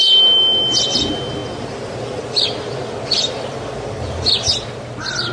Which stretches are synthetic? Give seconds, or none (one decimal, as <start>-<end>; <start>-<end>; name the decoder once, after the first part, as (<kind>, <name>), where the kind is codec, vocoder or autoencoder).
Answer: none